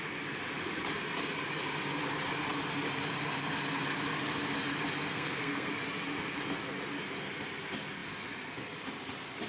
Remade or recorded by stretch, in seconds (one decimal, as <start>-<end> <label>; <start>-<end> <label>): 0.0-5.1 recorded; 5.1-5.7 remade; 5.7-9.5 recorded